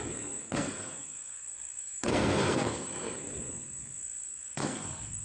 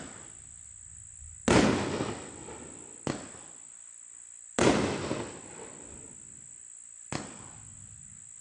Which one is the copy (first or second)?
first